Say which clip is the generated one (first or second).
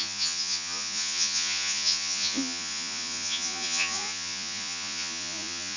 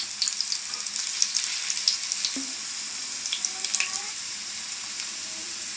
first